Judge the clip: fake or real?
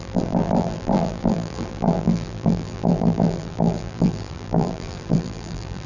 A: fake